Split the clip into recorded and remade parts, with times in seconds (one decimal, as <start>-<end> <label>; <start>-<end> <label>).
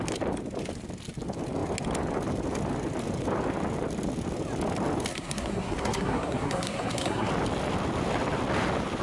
0.0-5.1 recorded; 5.1-7.3 remade; 7.3-9.0 recorded